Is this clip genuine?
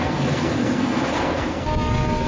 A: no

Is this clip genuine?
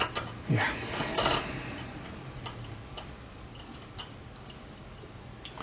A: yes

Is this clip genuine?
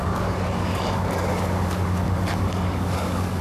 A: no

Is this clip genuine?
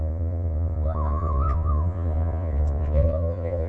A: no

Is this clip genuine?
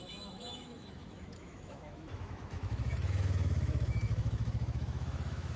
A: no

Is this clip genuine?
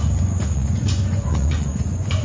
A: no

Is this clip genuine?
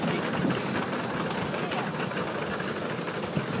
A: yes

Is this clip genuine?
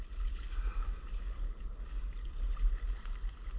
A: yes